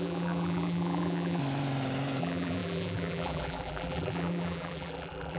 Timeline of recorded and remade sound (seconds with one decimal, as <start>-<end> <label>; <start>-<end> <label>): 0.0-1.4 remade; 1.4-2.2 recorded; 2.2-5.4 remade